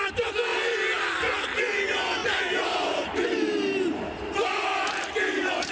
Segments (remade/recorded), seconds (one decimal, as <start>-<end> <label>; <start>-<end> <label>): 0.0-0.5 recorded; 0.5-1.1 remade; 1.1-2.2 recorded; 2.2-5.7 remade